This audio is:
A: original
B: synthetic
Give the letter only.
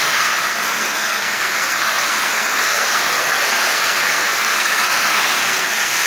B